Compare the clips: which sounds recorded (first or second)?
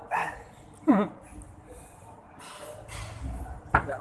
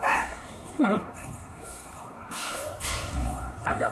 first